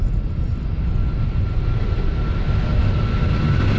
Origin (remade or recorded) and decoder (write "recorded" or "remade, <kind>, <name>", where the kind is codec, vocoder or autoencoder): recorded